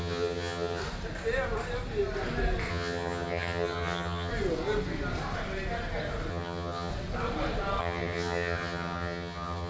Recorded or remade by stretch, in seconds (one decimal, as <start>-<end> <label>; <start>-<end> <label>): 0.0-0.8 remade; 0.8-2.7 recorded; 2.7-4.3 remade; 4.3-6.3 recorded; 6.3-6.9 remade; 6.9-7.8 recorded; 7.8-9.7 remade